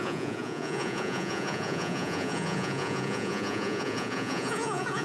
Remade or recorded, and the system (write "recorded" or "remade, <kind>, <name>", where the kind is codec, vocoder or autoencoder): remade, vocoder, Vocos